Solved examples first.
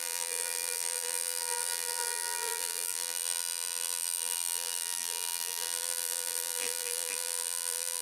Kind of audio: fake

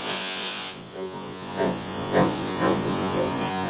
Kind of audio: fake